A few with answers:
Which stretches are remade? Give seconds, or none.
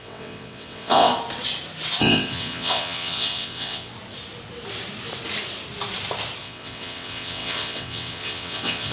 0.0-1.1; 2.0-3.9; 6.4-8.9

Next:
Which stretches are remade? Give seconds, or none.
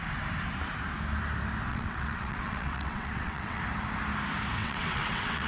1.7-3.6; 4.6-5.5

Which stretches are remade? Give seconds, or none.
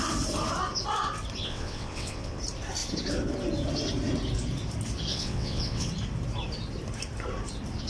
1.4-2.4; 5.1-5.9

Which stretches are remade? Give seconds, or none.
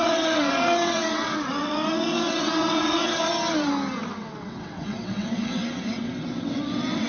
0.0-3.3; 4.2-7.1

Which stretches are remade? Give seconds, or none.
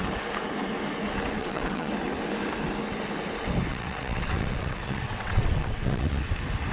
1.4-1.9; 3.7-6.3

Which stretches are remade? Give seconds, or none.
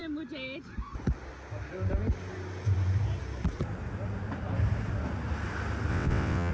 5.9-6.5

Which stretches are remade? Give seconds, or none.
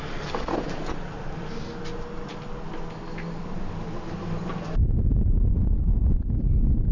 none